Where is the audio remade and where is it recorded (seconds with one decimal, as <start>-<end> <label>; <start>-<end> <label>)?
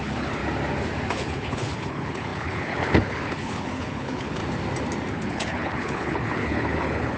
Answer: 0.0-0.4 remade; 0.4-1.1 recorded; 1.1-4.4 remade; 4.4-5.1 recorded; 5.1-7.2 remade